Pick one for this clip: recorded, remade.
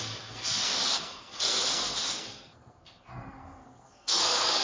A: remade